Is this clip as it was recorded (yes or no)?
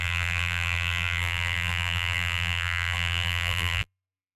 no